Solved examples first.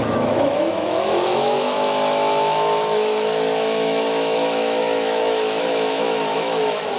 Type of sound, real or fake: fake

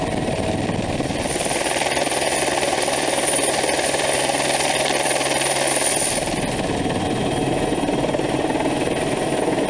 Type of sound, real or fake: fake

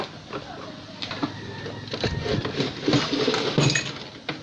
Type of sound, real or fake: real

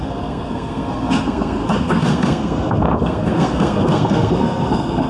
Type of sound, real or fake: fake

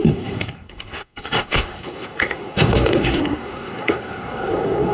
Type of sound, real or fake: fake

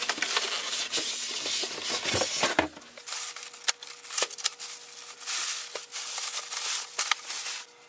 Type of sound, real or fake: real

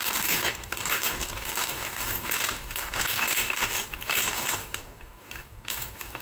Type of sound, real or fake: fake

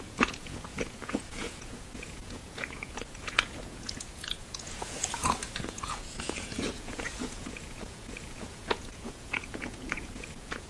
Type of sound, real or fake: fake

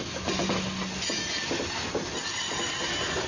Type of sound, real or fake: real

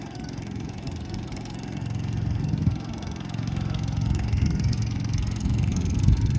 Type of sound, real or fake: fake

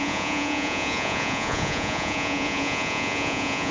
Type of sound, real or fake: fake